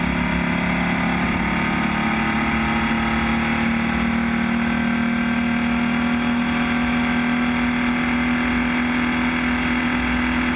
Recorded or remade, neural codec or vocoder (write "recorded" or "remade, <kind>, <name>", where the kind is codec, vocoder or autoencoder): recorded